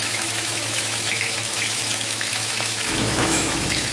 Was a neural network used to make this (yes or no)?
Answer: yes